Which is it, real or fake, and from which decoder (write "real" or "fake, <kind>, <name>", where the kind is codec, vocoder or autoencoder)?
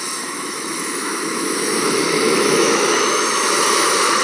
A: fake, autoencoder, DAC-VAE